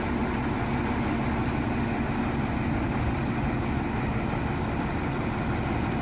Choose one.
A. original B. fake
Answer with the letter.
A